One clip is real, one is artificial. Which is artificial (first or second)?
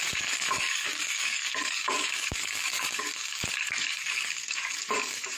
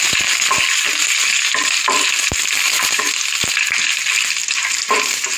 first